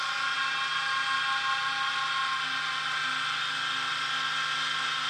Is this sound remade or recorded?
recorded